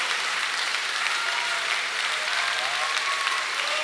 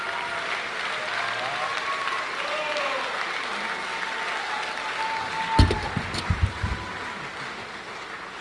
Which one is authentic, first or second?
second